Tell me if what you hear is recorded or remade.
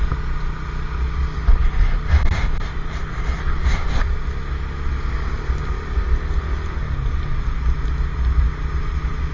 recorded